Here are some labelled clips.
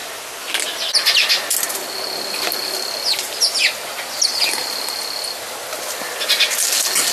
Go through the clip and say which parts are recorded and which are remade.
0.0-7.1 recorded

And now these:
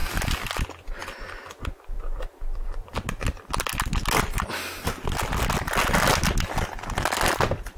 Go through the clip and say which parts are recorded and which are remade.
0.0-7.8 recorded

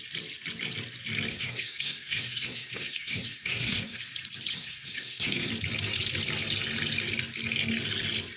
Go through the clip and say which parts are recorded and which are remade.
0.0-1.3 recorded; 1.3-4.0 remade; 4.0-4.5 recorded; 4.5-5.5 remade; 5.5-8.4 recorded